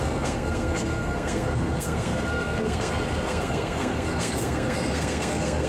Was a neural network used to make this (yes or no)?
yes